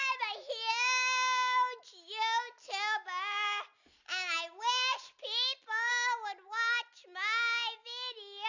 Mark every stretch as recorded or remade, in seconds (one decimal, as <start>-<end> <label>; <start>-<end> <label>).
0.0-8.5 recorded